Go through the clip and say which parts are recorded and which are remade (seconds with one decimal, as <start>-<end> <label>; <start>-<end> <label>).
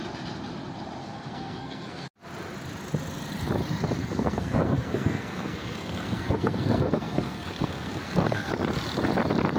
0.0-1.0 recorded; 1.0-2.1 remade; 2.1-4.0 recorded; 4.0-8.5 remade; 8.5-9.6 recorded